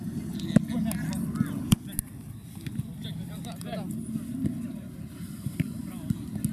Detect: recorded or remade recorded